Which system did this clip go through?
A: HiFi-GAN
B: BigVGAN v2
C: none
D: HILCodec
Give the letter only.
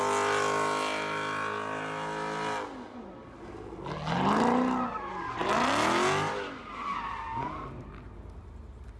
C